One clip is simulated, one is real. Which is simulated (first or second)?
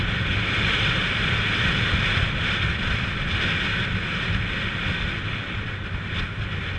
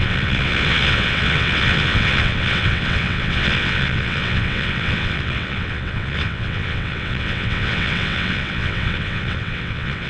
second